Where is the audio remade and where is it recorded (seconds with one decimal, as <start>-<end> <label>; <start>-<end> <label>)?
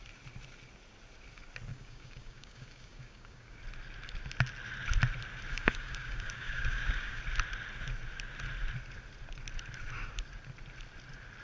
0.0-1.7 recorded; 1.7-3.6 remade; 3.6-5.5 recorded; 5.5-7.2 remade; 7.2-11.4 recorded